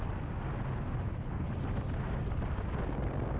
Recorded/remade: recorded